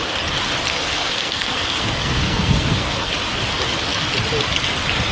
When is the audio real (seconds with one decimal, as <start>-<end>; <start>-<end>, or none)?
0.0-0.7; 3.1-5.1